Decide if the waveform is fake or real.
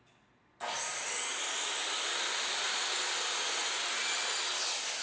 real